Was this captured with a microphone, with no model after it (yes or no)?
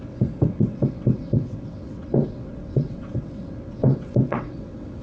no